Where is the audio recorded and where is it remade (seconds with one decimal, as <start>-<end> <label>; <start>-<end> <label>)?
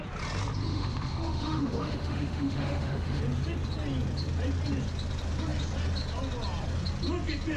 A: 0.0-0.7 recorded; 0.7-3.2 remade; 3.2-7.6 recorded